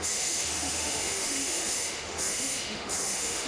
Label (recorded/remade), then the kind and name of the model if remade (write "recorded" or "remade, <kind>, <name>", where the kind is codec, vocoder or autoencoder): remade, autoencoder, DAC-VAE